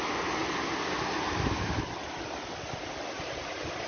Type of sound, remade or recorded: recorded